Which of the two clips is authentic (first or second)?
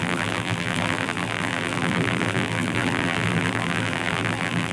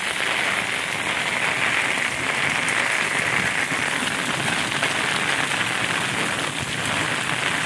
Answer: second